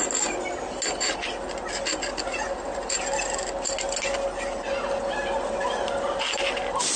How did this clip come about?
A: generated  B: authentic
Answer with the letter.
B